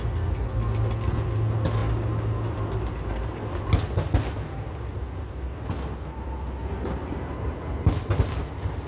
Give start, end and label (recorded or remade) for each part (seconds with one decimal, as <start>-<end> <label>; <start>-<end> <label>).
0.0-8.9 recorded